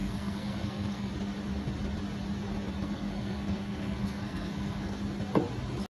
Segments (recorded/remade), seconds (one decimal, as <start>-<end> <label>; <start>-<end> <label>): 0.0-1.1 remade; 1.1-2.8 recorded; 2.8-5.0 remade; 5.0-5.9 recorded